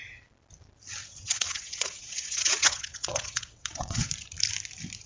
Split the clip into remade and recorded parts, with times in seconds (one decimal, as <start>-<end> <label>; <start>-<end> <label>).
0.0-1.0 recorded; 1.0-4.1 remade; 4.1-5.1 recorded